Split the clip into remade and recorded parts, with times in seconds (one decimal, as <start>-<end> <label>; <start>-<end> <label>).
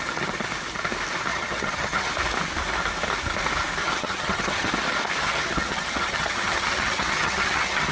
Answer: 0.0-1.3 recorded; 1.3-2.1 remade; 2.1-3.8 recorded; 3.8-4.7 remade; 4.7-5.2 recorded; 5.2-7.9 remade